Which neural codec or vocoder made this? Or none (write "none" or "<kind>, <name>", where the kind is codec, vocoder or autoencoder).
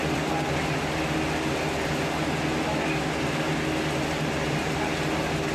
none